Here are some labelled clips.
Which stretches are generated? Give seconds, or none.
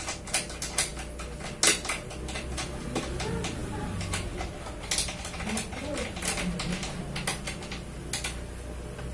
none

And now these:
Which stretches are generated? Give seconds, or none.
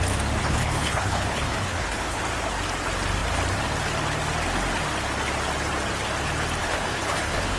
0.4-2.2 (codec, HILCodec); 6.6-7.6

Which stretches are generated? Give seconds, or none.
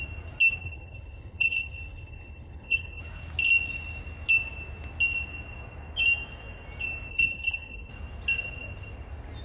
0.6-3.0 (codec, HILCodec); 7.1-7.9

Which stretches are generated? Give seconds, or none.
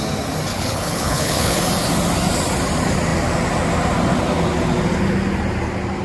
0.5-1.6 (codec, HILCodec)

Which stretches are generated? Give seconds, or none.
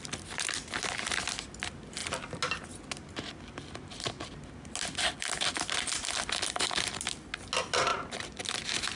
none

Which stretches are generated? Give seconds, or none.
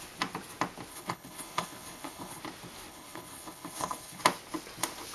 0.9-2.4 (codec, HILCodec); 2.9-4.2